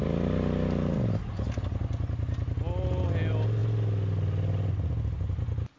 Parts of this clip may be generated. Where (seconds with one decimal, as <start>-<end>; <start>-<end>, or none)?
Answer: none